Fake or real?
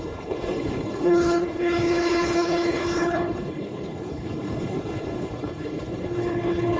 fake